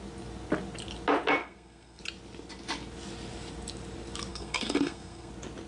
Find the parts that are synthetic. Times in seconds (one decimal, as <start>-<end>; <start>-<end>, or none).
1.4-2.0; 4.3-5.3